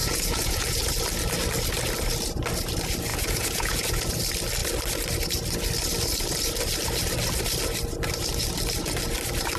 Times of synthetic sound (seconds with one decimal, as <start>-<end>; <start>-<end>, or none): 0.0-0.9; 3.1-4.1